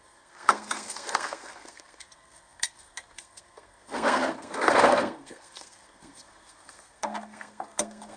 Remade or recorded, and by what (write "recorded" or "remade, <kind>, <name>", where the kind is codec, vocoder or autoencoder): remade, codec, SNAC